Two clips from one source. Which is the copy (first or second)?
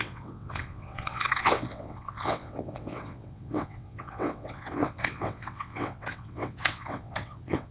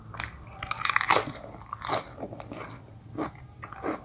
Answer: first